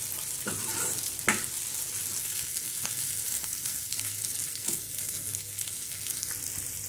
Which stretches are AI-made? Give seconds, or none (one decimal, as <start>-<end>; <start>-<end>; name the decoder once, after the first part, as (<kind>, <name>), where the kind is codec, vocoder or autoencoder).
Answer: 2.2-6.3 (codec, SNAC)